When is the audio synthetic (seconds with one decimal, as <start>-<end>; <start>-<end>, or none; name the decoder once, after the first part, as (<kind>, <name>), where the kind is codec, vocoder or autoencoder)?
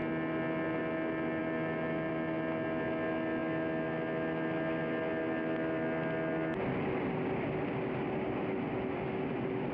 none